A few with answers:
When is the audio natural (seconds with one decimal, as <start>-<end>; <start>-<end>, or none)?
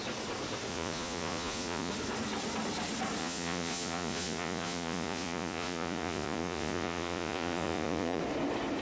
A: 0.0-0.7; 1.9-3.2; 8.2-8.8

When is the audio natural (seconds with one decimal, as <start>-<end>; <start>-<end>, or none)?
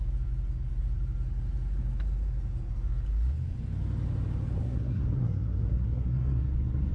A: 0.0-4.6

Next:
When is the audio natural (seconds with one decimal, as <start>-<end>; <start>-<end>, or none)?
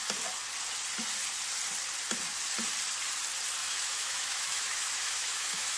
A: 0.0-3.6